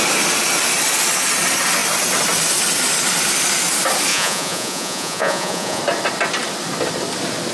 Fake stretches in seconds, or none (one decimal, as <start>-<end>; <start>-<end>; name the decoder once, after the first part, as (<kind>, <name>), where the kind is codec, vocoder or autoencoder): 4.1-5.8 (vocoder, Vocos)